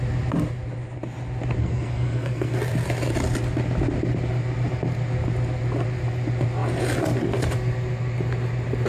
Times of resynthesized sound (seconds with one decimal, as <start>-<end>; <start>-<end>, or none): 1.6-2.6